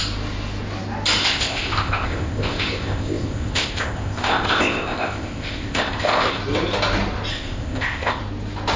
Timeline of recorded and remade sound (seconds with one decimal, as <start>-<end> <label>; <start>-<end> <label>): 0.0-1.2 recorded; 1.2-6.4 remade; 6.4-7.3 recorded; 7.3-8.2 remade; 8.2-8.8 recorded